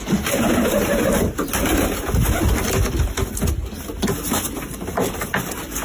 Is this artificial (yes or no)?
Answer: no